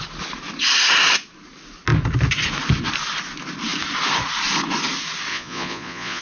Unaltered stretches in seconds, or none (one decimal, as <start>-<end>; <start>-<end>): 0.0-5.3